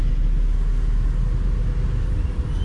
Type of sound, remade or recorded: recorded